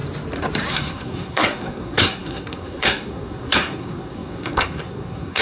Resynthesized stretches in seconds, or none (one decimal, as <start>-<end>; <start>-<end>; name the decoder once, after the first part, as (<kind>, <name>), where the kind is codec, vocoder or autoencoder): 0.7-5.4 (codec, SNAC)